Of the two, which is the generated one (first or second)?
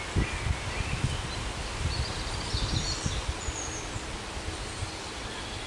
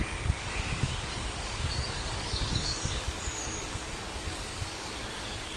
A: second